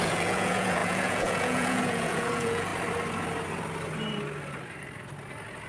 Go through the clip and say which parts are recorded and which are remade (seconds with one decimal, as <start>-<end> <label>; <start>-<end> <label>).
0.0-2.7 remade; 2.7-5.7 recorded